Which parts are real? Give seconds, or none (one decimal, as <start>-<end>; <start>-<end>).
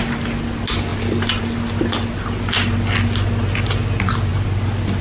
0.0-5.0